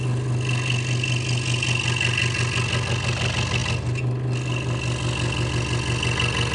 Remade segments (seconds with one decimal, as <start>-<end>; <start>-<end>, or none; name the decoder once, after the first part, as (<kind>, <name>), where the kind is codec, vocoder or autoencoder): none